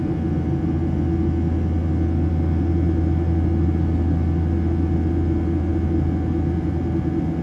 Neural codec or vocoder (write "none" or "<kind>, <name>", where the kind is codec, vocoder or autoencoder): none